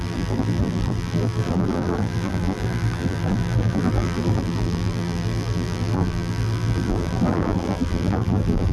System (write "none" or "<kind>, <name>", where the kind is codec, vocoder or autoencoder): vocoder, BigVGAN v2